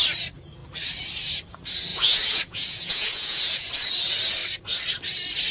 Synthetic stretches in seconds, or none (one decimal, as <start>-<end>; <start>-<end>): 1.9-3.7